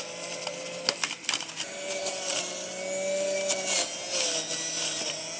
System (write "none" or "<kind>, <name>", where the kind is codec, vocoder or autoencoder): none